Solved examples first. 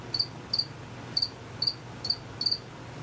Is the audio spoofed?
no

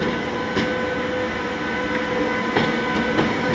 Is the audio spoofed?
no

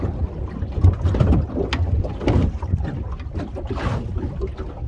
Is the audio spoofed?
no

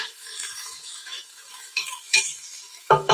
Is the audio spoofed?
yes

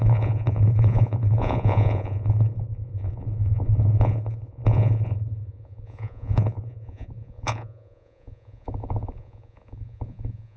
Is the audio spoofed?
yes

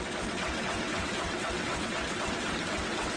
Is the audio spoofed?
yes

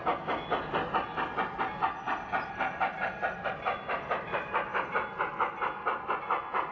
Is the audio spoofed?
no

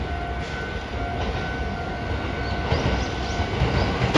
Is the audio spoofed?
no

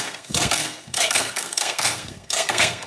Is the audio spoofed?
yes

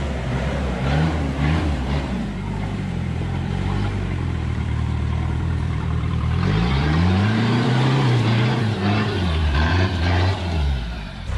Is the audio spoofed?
yes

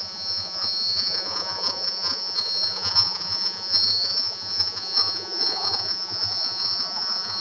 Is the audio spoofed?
yes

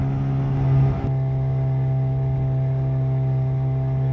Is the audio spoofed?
no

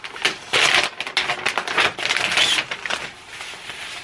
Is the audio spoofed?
no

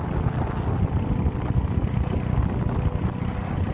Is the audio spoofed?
no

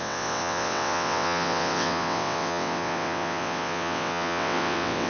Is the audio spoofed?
yes